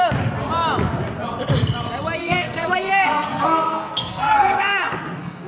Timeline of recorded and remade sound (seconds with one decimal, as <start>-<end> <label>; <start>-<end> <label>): 0.0-2.2 recorded; 2.2-5.5 remade